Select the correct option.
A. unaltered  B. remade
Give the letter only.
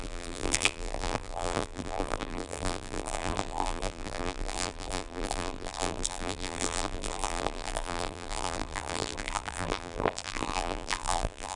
B